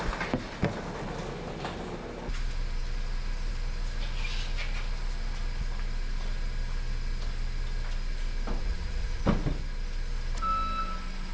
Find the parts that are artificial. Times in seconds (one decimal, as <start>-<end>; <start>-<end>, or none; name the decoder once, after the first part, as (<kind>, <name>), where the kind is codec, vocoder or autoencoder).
8.6-9.2 (vocoder, Vocos)